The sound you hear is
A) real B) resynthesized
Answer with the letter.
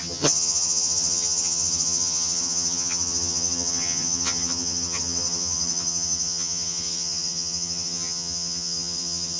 B